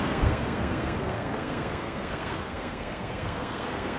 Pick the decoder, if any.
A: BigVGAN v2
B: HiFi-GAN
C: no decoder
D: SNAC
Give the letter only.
D